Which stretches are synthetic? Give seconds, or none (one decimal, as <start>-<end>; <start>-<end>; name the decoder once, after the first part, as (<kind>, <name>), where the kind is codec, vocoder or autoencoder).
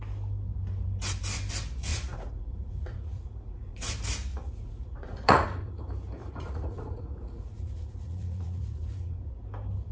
1.9-3.9 (vocoder, Vocos); 4.3-5.8; 6.2-9.3